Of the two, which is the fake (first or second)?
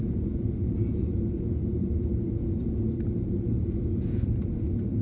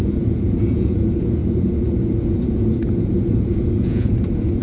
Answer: second